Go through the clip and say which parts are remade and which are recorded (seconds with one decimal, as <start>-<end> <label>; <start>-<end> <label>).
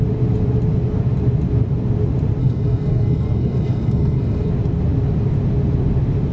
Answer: 0.0-2.4 recorded; 2.4-4.5 remade; 4.5-6.3 recorded